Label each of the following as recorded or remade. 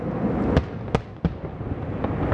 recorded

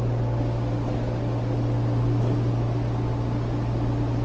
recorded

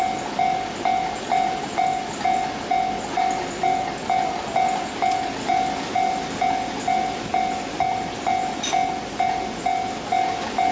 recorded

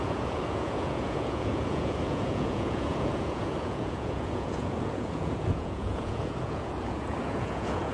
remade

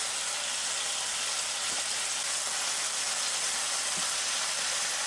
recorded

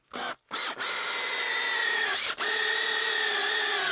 recorded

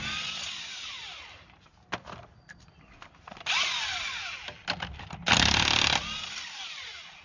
recorded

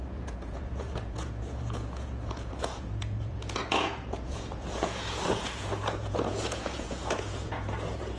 remade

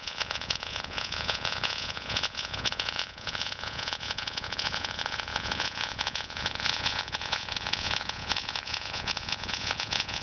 remade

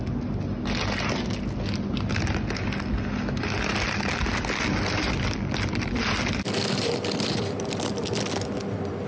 recorded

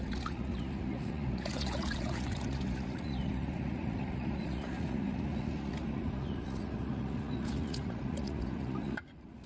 remade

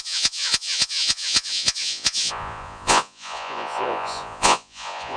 remade